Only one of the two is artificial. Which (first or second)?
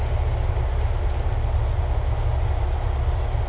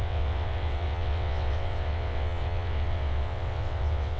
second